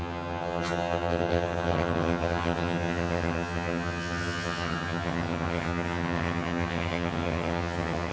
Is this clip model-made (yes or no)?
yes